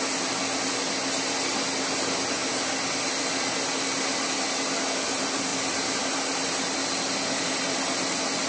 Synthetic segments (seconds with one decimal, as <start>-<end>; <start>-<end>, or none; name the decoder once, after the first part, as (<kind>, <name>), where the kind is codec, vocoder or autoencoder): none